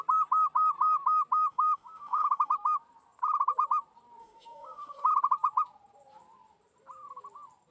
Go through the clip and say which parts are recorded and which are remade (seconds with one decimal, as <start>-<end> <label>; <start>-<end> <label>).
0.0-1.5 recorded; 1.5-2.5 remade; 2.5-4.2 recorded; 4.2-5.1 remade; 5.1-7.7 recorded